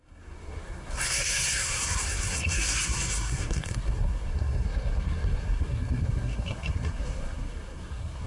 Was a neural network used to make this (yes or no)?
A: yes